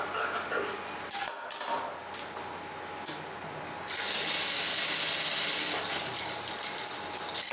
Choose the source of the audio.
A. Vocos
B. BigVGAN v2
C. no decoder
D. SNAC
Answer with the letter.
C